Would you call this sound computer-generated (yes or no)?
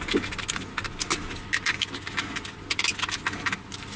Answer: no